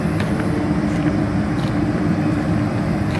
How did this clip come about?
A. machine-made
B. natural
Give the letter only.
B